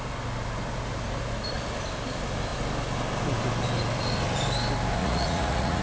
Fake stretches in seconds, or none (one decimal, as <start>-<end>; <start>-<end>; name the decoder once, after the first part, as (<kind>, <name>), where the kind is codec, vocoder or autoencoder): 5.0-5.8 (vocoder, Vocos)